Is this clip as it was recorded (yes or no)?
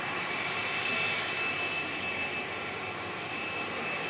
yes